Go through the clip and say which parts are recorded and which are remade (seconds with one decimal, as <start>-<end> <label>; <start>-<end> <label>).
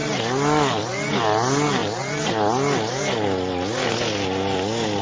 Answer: 0.0-5.0 recorded